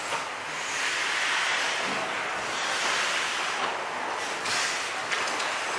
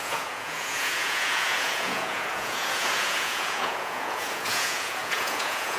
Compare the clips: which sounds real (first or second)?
first